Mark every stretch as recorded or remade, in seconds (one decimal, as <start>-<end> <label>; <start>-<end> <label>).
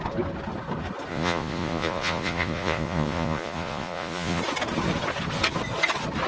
0.0-1.1 recorded; 1.1-4.4 remade; 4.4-6.3 recorded